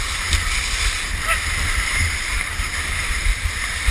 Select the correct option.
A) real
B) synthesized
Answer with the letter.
B